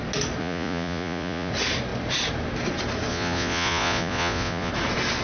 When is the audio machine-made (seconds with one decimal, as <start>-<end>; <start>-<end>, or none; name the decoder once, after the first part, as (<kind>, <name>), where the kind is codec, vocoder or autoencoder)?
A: 0.4-1.5 (vocoder, Vocos); 3.1-4.7